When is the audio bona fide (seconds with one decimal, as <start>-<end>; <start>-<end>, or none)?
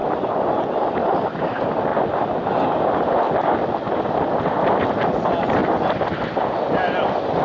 0.0-7.4